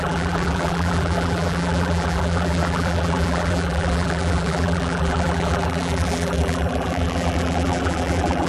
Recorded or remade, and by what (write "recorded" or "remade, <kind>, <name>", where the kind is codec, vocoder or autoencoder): remade, vocoder, BigVGAN v2